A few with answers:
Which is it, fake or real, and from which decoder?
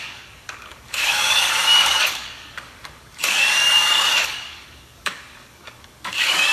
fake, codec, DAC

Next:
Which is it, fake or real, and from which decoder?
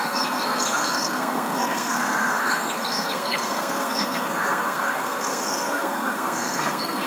fake, codec, SNAC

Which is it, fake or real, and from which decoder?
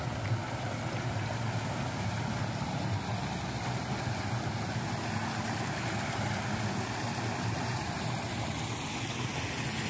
real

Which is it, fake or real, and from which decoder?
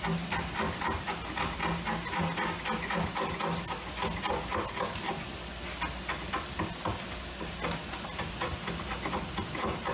real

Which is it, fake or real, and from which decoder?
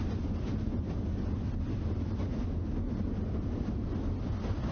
real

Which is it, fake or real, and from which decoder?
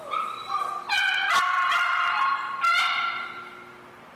real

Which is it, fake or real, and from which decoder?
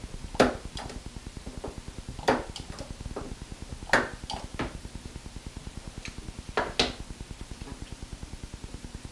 real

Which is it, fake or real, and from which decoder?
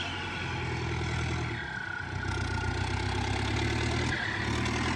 real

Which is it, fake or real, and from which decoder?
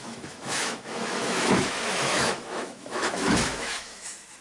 fake, autoencoder, DAC-VAE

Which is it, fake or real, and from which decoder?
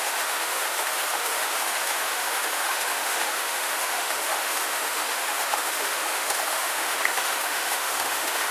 fake, autoencoder, DAC-VAE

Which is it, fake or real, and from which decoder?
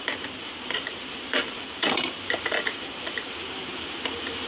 fake, vocoder, BigVGAN v2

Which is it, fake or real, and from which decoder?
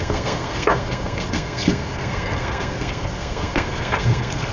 fake, codec, SNAC